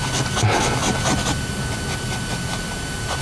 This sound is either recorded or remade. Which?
recorded